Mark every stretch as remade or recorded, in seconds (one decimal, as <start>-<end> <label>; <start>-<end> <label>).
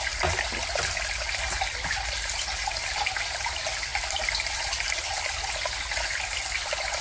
0.0-7.0 recorded